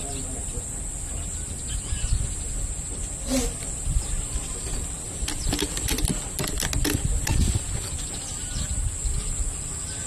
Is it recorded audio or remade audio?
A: recorded